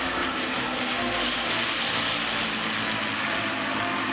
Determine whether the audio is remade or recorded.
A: recorded